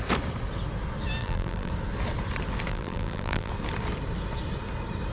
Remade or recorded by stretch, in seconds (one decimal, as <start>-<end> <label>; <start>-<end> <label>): 0.0-1.2 recorded; 1.2-1.7 remade; 1.7-2.7 recorded; 2.7-3.5 remade; 3.5-5.1 recorded